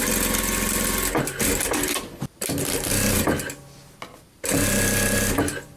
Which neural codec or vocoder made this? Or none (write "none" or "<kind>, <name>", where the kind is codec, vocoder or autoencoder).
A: none